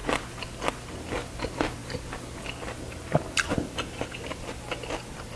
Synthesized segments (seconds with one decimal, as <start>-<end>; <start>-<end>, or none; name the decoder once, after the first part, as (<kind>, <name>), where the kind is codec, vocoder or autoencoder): none